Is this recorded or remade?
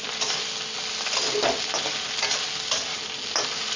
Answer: recorded